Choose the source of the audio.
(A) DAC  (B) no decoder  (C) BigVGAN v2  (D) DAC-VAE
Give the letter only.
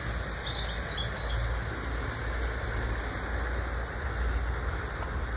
B